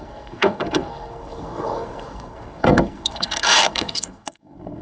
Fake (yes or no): yes